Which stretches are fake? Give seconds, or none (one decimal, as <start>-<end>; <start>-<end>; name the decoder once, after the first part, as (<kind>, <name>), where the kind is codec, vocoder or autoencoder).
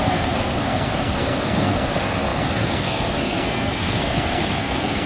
0.0-5.1 (codec, SNAC)